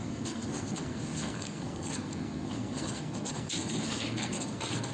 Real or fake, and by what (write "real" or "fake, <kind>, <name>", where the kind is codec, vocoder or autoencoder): fake, codec, SNAC